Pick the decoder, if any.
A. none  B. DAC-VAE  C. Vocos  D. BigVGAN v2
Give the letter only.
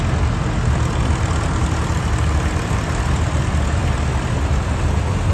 A